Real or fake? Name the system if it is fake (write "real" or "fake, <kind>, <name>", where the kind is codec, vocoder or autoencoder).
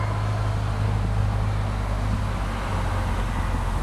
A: real